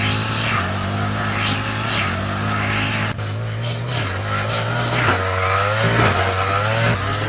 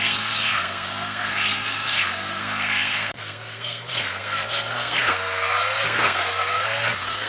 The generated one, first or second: second